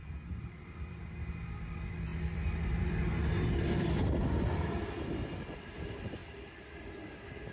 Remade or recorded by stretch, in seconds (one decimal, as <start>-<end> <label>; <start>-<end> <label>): 0.0-1.0 remade; 1.0-2.1 recorded; 2.1-5.8 remade; 5.8-7.5 recorded